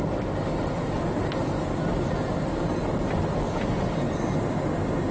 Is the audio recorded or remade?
recorded